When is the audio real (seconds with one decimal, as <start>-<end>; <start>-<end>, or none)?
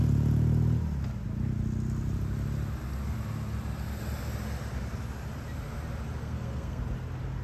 0.0-6.2; 6.8-7.4